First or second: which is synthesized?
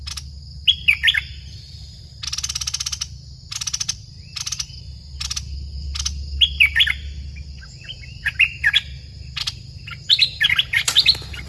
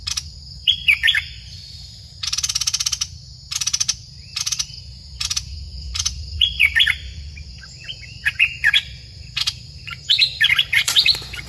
second